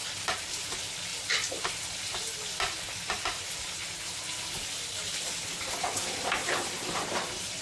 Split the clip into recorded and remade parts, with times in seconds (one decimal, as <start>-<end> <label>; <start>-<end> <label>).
0.0-0.7 remade; 0.7-6.4 recorded; 6.4-7.6 remade